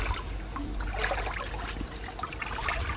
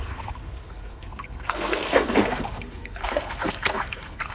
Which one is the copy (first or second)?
second